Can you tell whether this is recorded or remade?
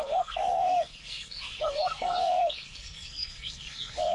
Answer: remade